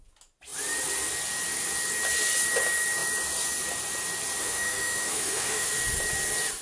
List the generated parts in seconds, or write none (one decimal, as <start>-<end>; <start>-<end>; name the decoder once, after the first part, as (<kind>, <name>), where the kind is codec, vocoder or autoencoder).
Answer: 4.4-5.7 (autoencoder, DAC-VAE)